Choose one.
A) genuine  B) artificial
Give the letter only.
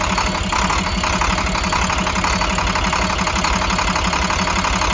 A